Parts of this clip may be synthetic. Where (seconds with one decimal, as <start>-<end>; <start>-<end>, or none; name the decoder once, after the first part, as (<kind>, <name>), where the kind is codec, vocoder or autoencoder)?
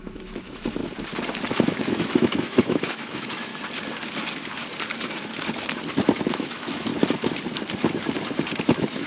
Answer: 0.0-0.8 (autoencoder, DAC-VAE); 1.5-3.5; 6.3-6.9; 8.6-9.1